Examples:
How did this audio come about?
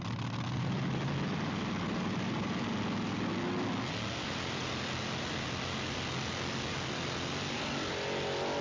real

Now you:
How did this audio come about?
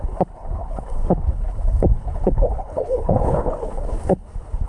fake